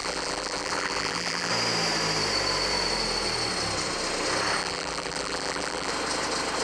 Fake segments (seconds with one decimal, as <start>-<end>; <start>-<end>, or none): 0.0-1.5; 4.6-5.9